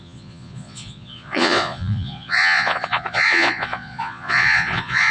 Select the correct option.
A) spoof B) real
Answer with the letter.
A